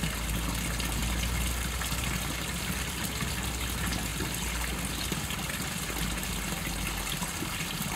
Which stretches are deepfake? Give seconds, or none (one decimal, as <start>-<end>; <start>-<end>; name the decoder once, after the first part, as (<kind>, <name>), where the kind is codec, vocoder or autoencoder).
none